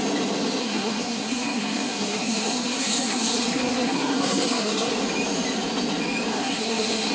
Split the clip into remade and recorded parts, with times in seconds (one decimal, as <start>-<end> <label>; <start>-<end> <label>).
0.0-0.6 recorded; 0.6-4.9 remade; 4.9-6.3 recorded; 6.3-7.1 remade

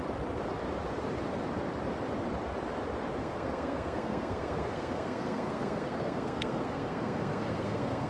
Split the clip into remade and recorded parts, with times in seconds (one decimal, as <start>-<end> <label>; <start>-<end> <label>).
0.0-3.2 recorded; 3.2-8.1 remade

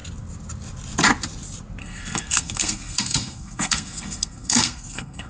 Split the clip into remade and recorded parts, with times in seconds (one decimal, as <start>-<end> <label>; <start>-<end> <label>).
0.0-1.8 recorded; 1.8-5.3 remade

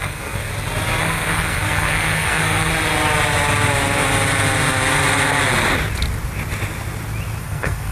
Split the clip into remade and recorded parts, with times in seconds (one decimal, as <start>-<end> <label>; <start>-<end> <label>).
0.0-0.5 remade; 0.5-1.0 recorded; 1.0-2.7 remade; 2.7-7.4 recorded; 7.4-7.9 remade

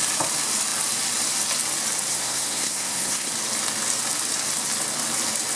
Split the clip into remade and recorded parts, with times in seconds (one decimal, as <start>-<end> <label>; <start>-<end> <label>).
0.0-2.1 recorded; 2.1-3.3 remade; 3.3-5.6 recorded

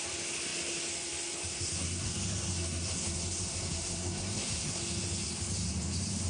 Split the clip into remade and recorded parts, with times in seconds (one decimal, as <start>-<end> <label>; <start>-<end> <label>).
0.0-1.5 recorded; 1.5-2.1 remade; 2.1-2.5 recorded; 2.5-4.8 remade; 4.8-6.3 recorded

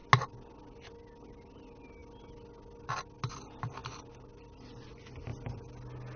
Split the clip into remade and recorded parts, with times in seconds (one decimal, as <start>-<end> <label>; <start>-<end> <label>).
0.0-6.2 recorded

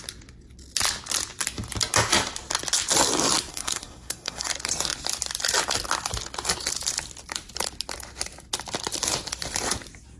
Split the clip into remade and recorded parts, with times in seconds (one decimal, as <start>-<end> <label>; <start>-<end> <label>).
0.0-3.5 recorded; 3.5-4.5 remade; 4.5-10.2 recorded